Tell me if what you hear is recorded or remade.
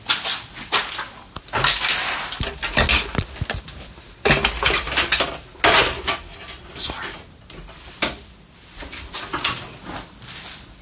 recorded